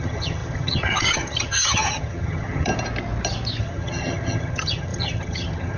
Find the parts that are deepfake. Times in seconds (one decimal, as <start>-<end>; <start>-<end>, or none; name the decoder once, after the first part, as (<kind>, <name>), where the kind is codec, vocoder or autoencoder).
0.0-2.7 (vocoder, HiFi-GAN); 3.6-5.8